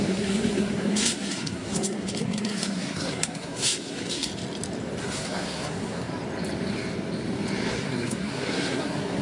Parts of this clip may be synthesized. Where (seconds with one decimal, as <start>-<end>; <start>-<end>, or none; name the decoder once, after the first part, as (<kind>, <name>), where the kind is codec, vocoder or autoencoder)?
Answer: 0.0-4.3 (codec, SNAC); 5.0-6.1; 7.7-9.2